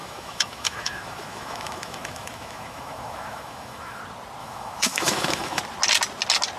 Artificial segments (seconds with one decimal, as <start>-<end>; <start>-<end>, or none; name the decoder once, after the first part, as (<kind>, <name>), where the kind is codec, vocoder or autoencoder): 0.0-4.0 (autoencoder, DAC-VAE); 4.4-5.6